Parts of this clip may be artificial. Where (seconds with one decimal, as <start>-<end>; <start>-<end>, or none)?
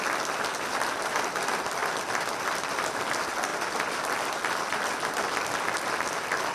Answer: none